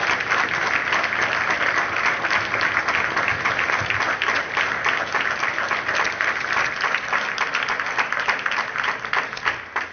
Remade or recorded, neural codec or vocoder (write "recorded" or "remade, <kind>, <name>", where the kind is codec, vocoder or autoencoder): recorded